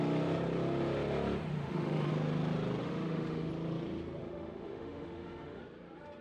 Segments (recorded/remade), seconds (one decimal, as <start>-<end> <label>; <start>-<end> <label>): 0.0-1.5 recorded; 1.5-2.1 remade; 2.1-2.8 recorded; 2.8-3.5 remade; 3.5-4.2 recorded; 4.2-5.6 remade; 5.6-6.2 recorded